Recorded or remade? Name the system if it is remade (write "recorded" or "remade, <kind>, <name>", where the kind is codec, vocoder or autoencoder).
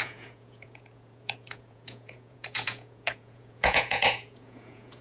remade, vocoder, Vocos